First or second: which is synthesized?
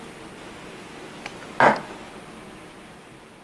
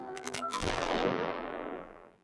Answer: second